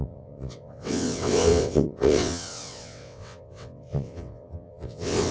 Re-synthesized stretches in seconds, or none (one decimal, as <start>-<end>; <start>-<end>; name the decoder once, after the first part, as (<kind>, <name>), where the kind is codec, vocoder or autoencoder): 0.0-5.3 (vocoder, WaveNeXt)